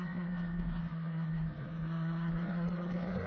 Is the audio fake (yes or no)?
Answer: yes